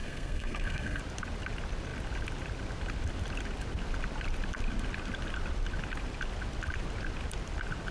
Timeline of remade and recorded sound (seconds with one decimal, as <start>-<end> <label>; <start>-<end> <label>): 0.0-1.0 remade; 1.0-7.9 recorded